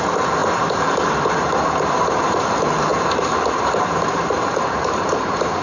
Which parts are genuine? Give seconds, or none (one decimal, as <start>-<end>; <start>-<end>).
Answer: none